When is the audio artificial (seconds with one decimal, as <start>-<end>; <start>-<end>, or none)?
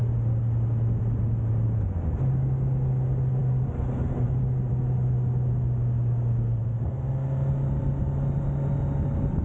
none